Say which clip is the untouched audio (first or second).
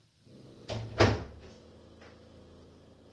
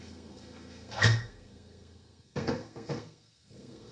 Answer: first